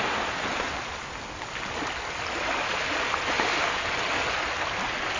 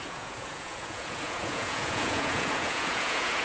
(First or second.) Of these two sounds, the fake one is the second